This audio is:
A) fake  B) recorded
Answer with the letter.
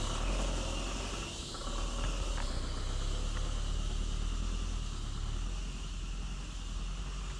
B